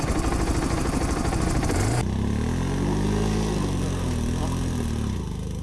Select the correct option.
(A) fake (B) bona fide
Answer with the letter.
B